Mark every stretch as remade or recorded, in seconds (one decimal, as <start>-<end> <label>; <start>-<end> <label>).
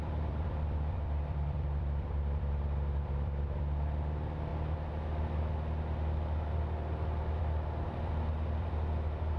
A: 0.0-4.5 remade; 4.5-7.4 recorded; 7.4-9.4 remade